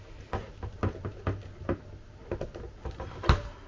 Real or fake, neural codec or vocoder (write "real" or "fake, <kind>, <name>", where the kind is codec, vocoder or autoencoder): real